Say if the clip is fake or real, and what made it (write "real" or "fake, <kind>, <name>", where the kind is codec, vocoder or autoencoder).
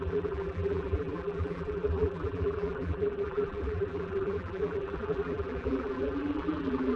fake, vocoder, BigVGAN v2